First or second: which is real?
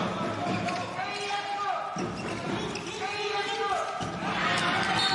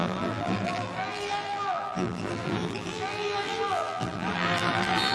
first